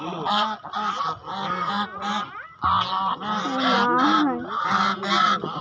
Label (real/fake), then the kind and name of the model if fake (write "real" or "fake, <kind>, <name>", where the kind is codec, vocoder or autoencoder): real